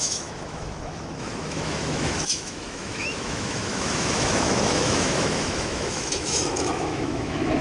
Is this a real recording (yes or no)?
no